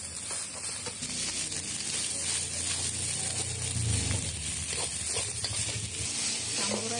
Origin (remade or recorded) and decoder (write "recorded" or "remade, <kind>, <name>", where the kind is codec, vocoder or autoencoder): recorded